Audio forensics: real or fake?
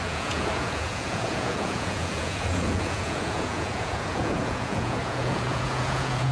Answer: fake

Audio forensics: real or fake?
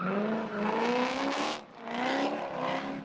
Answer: real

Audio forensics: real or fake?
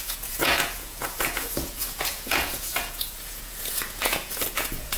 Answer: fake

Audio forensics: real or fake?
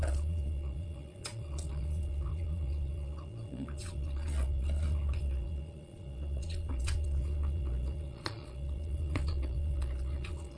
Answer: fake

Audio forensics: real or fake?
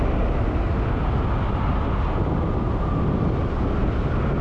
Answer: real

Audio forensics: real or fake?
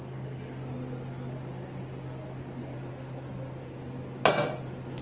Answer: real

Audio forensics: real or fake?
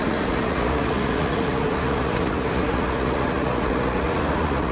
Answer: fake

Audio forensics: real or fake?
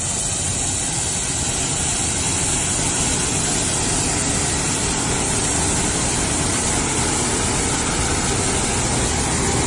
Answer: real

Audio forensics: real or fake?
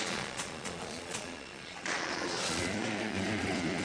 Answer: fake